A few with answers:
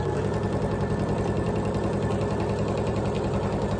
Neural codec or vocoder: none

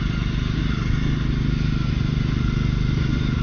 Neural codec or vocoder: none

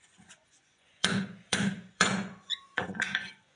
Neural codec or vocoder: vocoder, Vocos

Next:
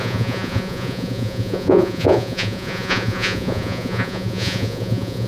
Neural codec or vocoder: vocoder, Vocos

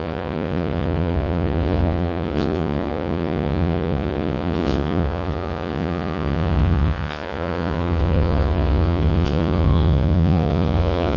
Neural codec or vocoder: vocoder, Vocos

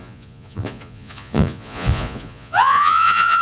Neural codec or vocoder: vocoder, Vocos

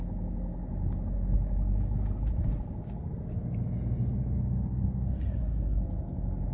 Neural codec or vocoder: none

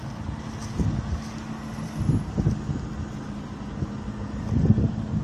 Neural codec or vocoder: none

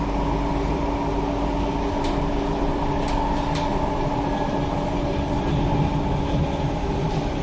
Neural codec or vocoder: none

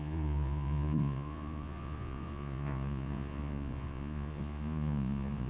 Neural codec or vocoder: vocoder, Vocos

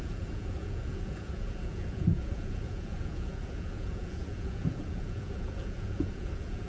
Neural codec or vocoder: vocoder, Vocos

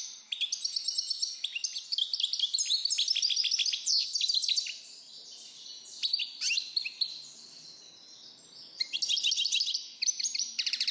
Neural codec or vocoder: none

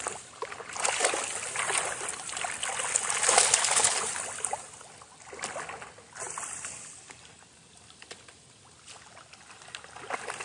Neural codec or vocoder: none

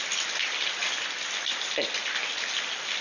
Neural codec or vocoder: none